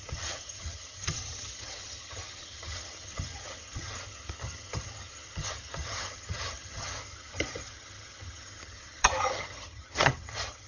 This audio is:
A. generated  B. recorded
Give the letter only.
A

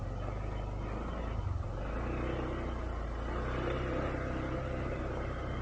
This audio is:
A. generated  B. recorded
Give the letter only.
B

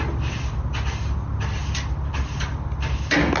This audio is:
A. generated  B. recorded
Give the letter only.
B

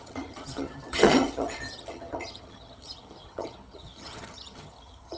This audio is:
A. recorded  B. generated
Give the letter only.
B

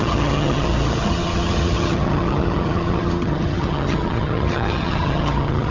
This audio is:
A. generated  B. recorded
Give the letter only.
A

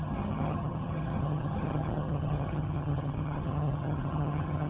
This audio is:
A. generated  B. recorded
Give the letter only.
A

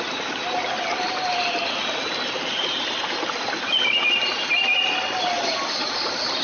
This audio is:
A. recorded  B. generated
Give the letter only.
A